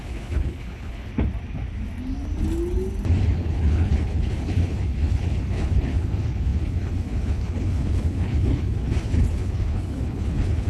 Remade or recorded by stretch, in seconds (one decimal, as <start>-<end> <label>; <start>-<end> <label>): 0.0-1.1 remade; 1.1-3.2 recorded; 3.2-10.7 remade